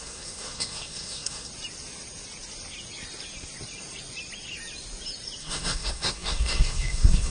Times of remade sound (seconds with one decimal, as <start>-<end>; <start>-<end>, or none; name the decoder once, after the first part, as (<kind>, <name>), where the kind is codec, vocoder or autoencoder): 0.0-1.5 (codec, SNAC); 5.4-7.3